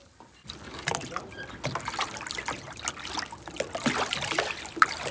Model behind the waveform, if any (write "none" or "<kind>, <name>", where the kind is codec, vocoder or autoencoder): none